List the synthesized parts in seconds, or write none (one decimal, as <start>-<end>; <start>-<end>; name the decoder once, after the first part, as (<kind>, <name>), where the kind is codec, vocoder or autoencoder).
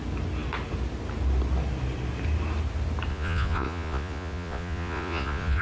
3.1-5.6 (vocoder, Vocos)